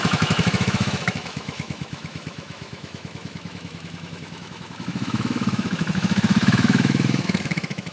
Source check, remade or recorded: remade